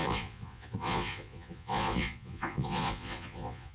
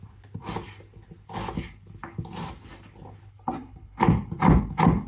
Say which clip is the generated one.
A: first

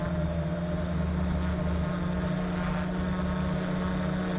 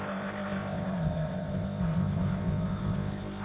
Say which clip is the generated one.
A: second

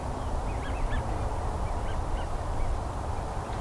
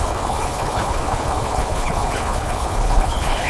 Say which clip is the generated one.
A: second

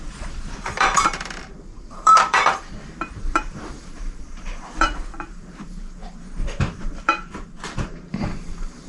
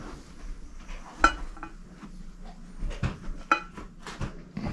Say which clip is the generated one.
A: first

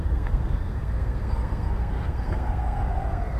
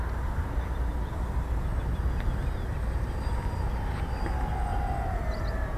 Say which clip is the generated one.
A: first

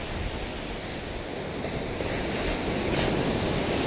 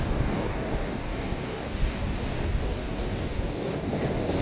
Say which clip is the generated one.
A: second